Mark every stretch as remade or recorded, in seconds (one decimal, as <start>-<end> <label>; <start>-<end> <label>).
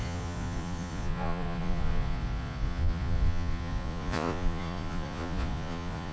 0.0-6.1 remade